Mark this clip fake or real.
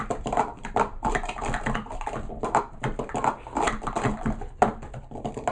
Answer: real